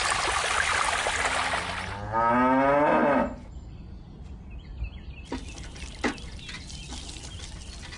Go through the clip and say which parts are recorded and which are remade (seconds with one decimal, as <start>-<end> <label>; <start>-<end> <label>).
0.0-8.0 recorded